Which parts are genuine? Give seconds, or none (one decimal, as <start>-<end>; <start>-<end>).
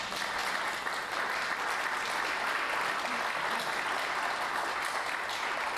0.0-5.8